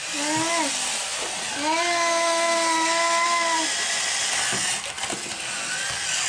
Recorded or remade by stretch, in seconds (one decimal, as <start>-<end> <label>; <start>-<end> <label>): 0.0-6.3 recorded